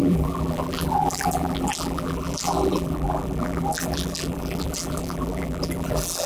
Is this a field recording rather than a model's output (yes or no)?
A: no